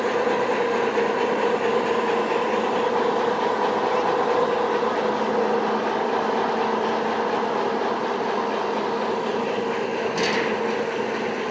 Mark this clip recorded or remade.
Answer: recorded